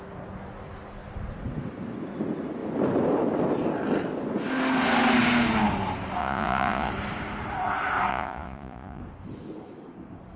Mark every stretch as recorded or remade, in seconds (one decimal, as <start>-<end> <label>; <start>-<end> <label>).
0.0-6.2 recorded; 6.2-6.9 remade; 6.9-8.1 recorded; 8.1-9.0 remade; 9.0-10.4 recorded